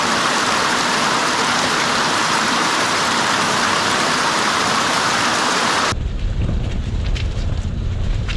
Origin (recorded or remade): remade